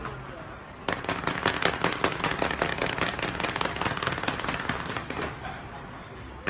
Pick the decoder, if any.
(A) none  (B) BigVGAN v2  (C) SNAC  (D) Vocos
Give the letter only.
A